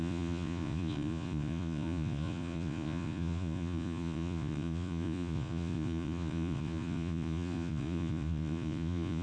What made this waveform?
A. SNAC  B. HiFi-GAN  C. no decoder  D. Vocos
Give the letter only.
D